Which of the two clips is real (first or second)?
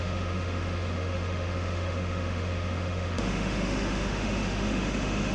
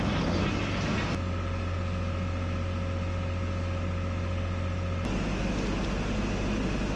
second